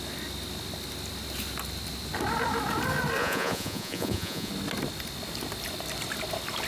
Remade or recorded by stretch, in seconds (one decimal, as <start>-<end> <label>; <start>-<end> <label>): 0.0-3.2 recorded; 3.2-4.5 remade; 4.5-6.7 recorded

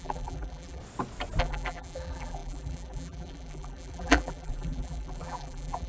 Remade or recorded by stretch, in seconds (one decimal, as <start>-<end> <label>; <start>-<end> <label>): 0.0-0.8 remade; 0.8-1.4 recorded; 1.4-5.9 remade

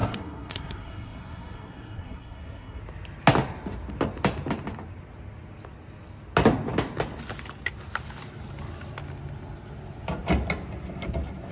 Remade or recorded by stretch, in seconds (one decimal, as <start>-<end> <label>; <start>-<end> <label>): 0.0-2.8 remade; 2.8-11.5 recorded

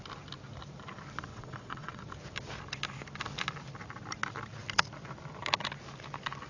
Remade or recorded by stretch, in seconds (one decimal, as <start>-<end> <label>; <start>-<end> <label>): 0.0-1.3 recorded; 1.3-2.0 remade; 2.0-6.5 recorded

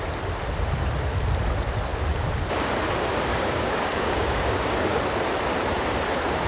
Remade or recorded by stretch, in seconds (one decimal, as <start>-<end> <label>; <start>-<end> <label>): 0.0-3.3 recorded; 3.3-5.0 remade; 5.0-6.5 recorded

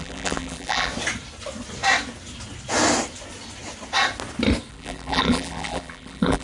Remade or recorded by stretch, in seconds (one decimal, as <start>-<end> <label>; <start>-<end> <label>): 0.0-0.9 remade; 0.9-4.7 recorded; 4.7-6.4 remade

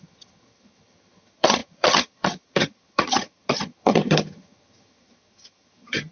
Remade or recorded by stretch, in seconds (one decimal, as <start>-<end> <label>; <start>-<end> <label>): 0.0-6.1 remade